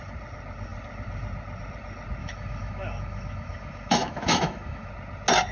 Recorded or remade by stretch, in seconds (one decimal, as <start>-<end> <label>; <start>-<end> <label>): 0.0-2.2 recorded; 2.2-4.9 remade; 4.9-5.5 recorded